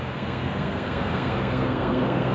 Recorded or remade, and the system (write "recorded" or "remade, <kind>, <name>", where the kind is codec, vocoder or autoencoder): remade, codec, SNAC